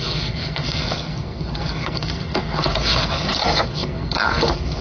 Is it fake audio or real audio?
fake